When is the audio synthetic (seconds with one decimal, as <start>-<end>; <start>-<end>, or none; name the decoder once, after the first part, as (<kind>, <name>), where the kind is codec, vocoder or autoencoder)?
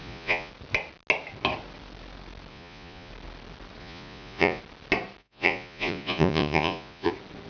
0.0-0.5 (vocoder, Vocos); 2.5-3.1; 3.8-4.6; 5.2-7.1